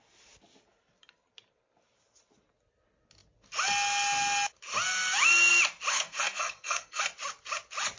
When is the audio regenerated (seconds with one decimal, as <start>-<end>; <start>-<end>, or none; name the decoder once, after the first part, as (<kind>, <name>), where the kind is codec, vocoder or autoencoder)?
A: 5.9-7.0 (codec, SNAC)